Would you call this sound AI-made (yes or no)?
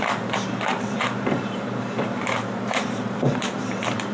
yes